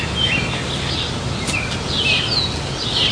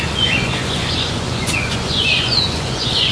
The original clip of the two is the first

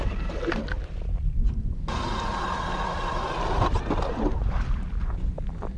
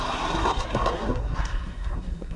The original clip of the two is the first